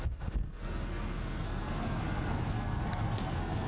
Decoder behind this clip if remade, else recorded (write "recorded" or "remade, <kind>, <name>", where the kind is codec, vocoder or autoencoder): remade, codec, SNAC